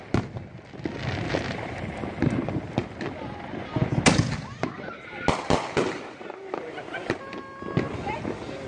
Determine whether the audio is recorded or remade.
recorded